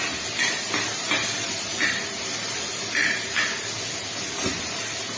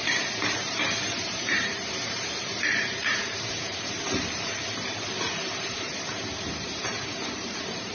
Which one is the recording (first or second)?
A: first